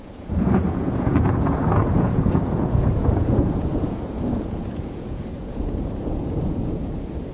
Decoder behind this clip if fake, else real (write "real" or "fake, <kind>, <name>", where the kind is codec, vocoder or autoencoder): fake, vocoder, Vocos